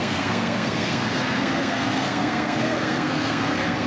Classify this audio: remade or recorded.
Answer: remade